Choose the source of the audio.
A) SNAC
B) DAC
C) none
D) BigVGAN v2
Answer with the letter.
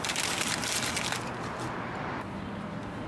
C